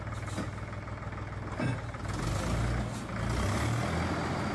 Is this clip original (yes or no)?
yes